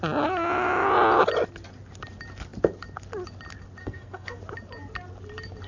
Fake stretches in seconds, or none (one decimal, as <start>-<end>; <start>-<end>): 3.8-4.4